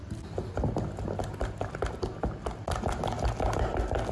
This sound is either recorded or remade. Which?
recorded